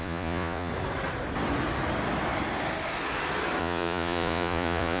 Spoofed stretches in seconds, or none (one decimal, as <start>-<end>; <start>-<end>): 0.0-0.7; 3.6-5.0